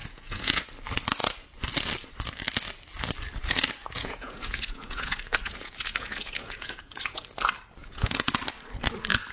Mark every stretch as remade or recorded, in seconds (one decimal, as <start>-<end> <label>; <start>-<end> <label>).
0.0-0.6 remade; 0.6-4.0 recorded; 4.0-7.2 remade; 7.2-7.8 recorded; 7.8-8.3 remade; 8.3-9.3 recorded